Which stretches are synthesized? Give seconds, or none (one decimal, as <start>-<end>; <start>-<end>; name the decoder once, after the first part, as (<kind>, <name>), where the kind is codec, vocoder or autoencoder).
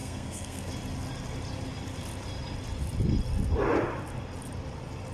0.0-0.7 (codec, SNAC)